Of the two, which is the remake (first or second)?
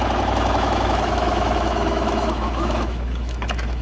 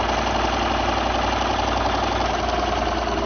first